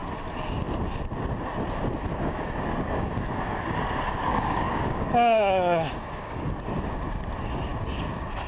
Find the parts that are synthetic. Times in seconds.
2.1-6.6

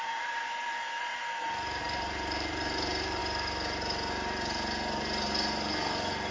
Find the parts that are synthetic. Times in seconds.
0.0-1.1; 1.8-3.2

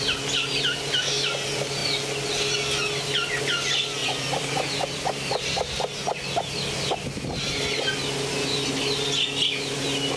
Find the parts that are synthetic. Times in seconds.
4.0-5.7

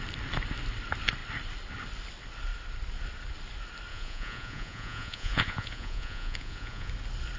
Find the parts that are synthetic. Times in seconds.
3.9-6.9